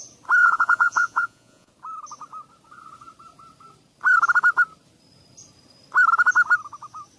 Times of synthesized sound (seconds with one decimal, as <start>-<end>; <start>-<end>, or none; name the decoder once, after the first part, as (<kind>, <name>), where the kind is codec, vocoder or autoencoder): 0.4-1.7 (vocoder, Vocos)